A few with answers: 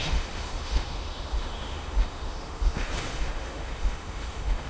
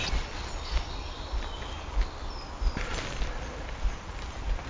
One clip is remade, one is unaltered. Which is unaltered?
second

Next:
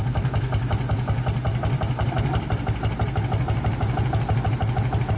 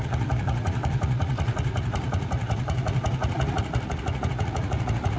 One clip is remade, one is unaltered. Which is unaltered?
first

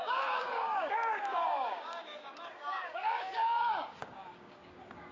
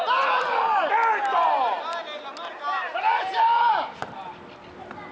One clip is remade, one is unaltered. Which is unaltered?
second